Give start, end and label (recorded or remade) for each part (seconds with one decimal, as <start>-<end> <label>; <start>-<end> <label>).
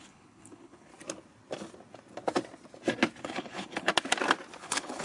0.0-0.9 remade; 0.9-3.2 recorded; 3.2-3.9 remade; 3.9-4.6 recorded; 4.6-5.0 remade